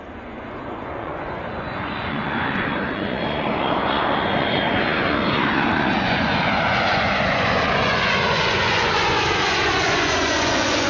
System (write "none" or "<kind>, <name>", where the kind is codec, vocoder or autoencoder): vocoder, Vocos